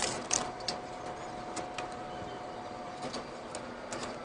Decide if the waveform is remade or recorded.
recorded